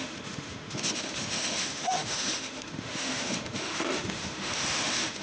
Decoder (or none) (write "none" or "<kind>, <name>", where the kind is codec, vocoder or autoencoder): autoencoder, DAC-VAE